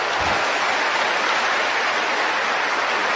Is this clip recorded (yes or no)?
yes